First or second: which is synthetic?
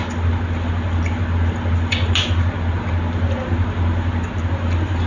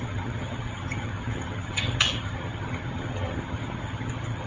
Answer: second